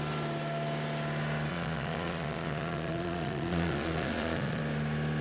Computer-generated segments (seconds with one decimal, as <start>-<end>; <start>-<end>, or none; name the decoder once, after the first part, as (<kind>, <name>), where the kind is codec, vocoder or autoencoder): 1.5-4.6 (vocoder, Vocos)